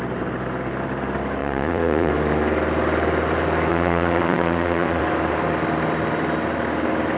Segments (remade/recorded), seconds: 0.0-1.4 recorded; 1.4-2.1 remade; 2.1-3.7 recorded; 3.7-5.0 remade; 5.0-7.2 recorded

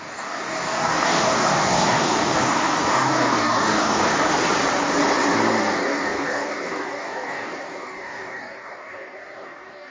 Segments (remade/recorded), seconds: 0.0-4.1 remade; 4.1-5.6 recorded; 5.6-9.9 remade

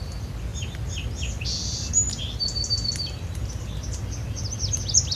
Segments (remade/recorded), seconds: 0.0-5.2 recorded

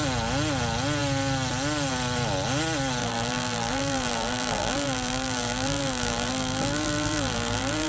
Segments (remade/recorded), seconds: 0.0-3.0 recorded; 3.0-7.9 remade